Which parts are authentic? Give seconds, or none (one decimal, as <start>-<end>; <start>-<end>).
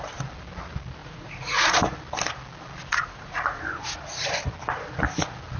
0.0-1.0; 1.9-2.9; 3.6-5.6